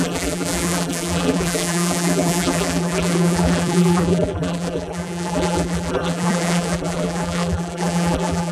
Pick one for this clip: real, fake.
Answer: fake